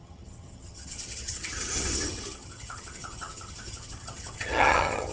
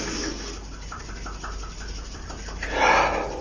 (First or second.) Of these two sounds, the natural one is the second